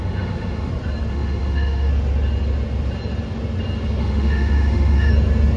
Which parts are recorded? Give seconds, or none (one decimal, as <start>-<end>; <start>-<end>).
0.7-1.1; 1.9-4.0; 5.1-5.6